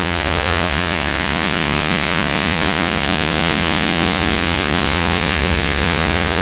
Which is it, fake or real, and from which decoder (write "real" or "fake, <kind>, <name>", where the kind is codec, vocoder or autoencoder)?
fake, vocoder, Vocos